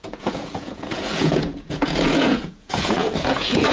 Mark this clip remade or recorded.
remade